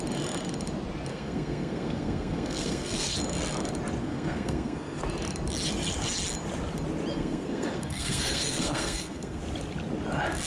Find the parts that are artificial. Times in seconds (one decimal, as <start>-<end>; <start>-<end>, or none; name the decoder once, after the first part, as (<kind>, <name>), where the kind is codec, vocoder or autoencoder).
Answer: 1.1-3.1 (codec, SNAC); 4.0-5.0; 7.1-9.4